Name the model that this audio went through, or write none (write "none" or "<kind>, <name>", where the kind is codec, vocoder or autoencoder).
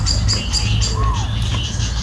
none